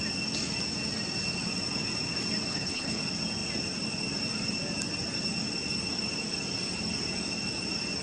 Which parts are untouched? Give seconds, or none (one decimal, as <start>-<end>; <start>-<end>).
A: 0.0-2.5; 3.0-8.0